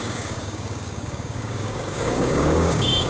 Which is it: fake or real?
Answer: fake